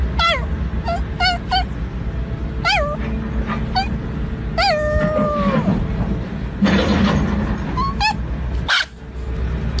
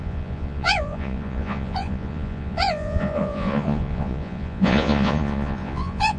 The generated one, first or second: second